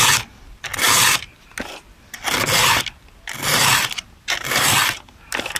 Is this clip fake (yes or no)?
no